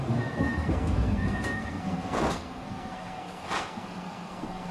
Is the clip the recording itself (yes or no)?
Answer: no